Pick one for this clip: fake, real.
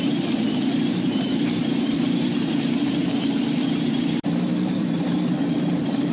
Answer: fake